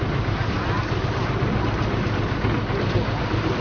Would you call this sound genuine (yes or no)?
yes